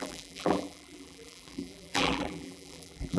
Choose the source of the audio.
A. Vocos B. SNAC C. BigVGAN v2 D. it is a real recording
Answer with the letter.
C